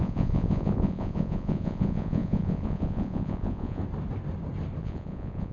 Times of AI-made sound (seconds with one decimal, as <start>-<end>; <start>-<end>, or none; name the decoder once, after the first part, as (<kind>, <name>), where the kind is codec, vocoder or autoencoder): 0.0-3.8 (vocoder, Vocos); 4.8-5.5